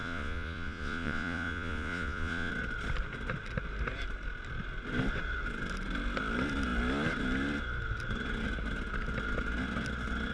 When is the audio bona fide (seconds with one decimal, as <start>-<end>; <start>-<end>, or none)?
2.5-10.3